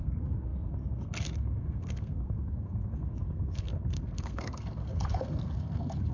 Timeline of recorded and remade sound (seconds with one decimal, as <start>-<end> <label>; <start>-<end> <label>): 0.0-6.1 remade